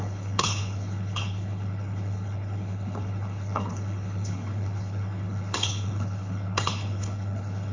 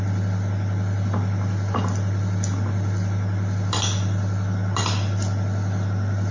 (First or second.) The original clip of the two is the second